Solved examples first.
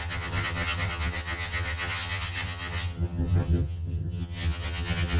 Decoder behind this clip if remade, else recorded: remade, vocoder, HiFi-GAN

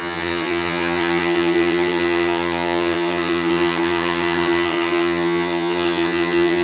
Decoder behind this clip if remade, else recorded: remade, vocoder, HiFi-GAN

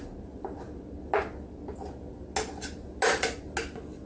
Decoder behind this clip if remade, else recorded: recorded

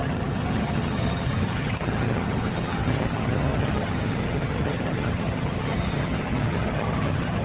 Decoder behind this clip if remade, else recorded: remade, vocoder, HiFi-GAN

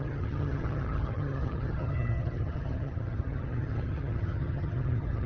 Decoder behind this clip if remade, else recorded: remade, vocoder, HiFi-GAN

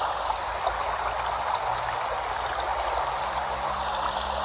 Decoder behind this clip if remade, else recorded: recorded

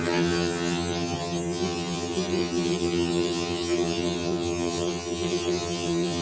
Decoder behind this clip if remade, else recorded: remade, vocoder, HiFi-GAN